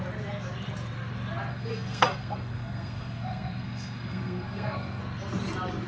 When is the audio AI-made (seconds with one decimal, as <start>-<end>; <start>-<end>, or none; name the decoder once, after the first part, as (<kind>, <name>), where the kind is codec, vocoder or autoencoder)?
1.5-5.0 (codec, SNAC)